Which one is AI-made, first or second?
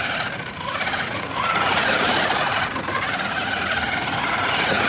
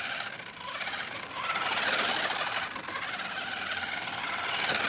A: first